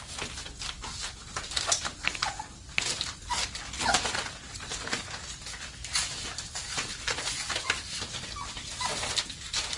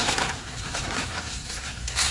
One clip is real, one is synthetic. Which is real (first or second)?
first